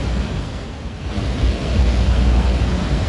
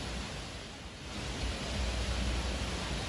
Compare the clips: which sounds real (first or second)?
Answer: second